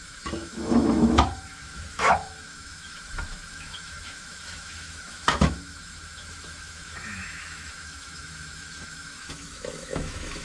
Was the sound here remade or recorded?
remade